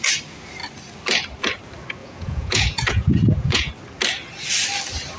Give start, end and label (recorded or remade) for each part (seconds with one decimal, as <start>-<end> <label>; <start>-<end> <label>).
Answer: 0.0-2.0 recorded; 2.0-3.7 remade; 3.7-5.2 recorded